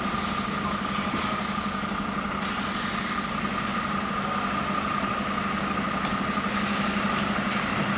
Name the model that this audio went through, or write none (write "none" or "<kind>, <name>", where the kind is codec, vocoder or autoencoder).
none